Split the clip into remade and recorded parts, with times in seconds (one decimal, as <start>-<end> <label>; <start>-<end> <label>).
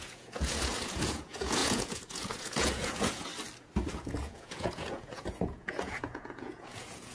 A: 0.0-3.3 remade; 3.3-3.9 recorded; 3.9-7.1 remade